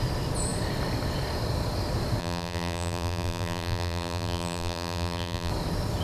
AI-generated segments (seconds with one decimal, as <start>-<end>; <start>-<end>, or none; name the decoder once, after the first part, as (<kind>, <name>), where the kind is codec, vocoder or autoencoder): 2.2-5.5 (vocoder, BigVGAN v2)